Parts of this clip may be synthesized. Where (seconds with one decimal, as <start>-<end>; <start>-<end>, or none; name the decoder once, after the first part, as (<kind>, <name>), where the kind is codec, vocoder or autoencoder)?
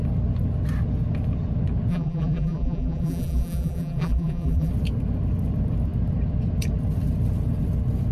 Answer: 1.9-4.7 (vocoder, BigVGAN v2)